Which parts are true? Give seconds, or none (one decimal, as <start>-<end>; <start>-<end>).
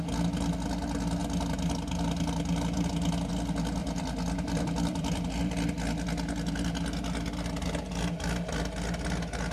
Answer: 0.0-3.8; 5.4-9.5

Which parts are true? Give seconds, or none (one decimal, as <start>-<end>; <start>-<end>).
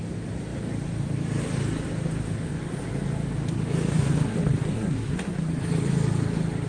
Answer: 0.0-3.9; 5.5-6.7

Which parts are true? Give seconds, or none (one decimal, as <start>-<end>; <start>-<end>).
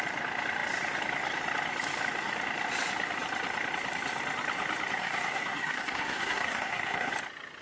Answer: 0.0-5.0; 7.1-7.6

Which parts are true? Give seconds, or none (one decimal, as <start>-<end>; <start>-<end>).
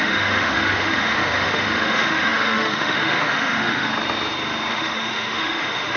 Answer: 3.9-4.7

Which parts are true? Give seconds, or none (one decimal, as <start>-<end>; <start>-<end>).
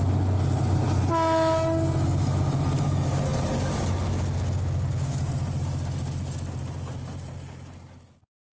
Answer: 0.0-8.5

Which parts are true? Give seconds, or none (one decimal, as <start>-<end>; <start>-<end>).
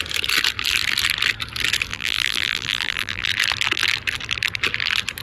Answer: 0.0-1.9; 3.3-5.2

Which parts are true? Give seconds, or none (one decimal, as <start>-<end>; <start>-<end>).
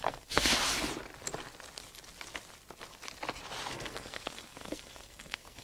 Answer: 0.5-3.7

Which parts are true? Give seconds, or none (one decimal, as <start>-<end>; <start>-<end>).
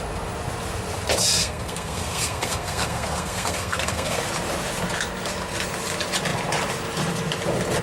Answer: 0.0-1.4; 4.2-7.8